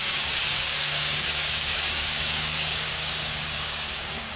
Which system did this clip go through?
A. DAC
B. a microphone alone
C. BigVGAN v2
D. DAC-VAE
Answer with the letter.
A